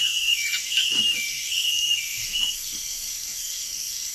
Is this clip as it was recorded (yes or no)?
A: no